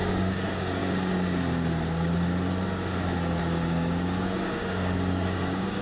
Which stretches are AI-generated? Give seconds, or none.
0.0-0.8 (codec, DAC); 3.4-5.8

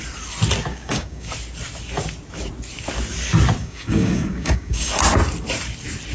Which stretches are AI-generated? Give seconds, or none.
0.7-1.3 (codec, DAC); 3.6-4.9

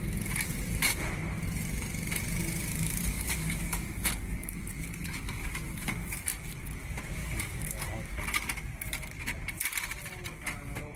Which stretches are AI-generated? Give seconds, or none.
2.7-6.2 (codec, DAC); 7.2-8.2

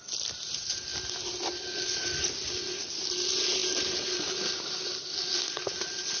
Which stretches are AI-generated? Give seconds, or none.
none